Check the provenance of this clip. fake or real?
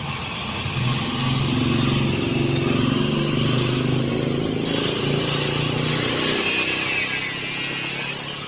real